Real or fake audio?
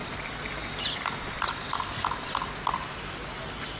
real